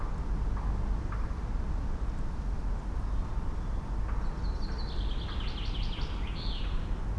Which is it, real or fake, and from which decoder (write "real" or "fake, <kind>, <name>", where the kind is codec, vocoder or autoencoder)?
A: real